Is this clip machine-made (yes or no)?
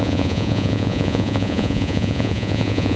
yes